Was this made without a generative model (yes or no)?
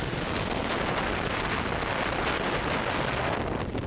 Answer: yes